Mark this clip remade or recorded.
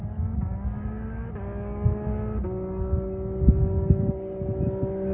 recorded